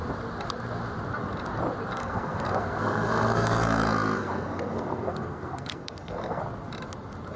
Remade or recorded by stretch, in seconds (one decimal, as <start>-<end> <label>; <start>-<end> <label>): 0.0-2.0 recorded; 2.0-6.4 remade; 6.4-7.4 recorded